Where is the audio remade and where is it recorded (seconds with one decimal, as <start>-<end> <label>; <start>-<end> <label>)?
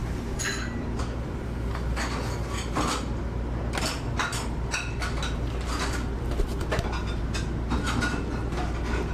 0.0-9.1 recorded